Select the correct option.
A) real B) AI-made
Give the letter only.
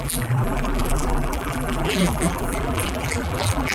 B